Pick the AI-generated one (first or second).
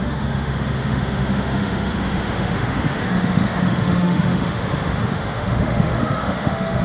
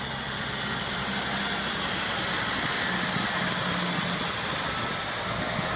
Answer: first